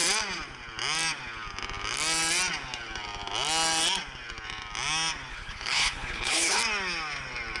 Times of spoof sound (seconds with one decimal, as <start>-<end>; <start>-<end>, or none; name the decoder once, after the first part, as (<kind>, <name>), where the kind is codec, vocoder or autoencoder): 5.3-6.6 (codec, HILCodec)